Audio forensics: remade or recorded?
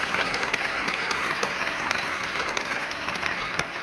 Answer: remade